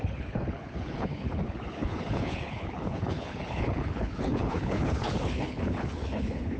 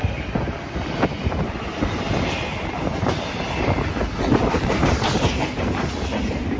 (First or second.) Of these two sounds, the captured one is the second